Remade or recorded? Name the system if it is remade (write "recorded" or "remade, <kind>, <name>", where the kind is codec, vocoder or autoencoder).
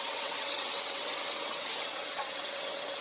remade, vocoder, WaveNeXt